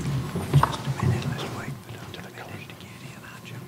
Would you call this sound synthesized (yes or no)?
no